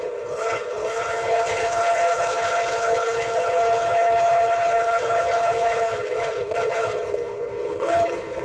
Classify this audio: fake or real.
fake